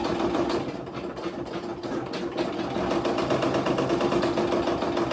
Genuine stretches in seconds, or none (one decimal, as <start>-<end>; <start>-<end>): 0.0-5.1